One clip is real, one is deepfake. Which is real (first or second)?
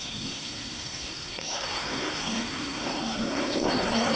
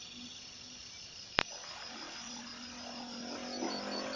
second